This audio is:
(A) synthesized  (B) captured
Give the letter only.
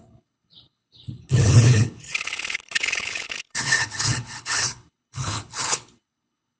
A